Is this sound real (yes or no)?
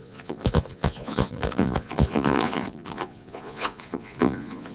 no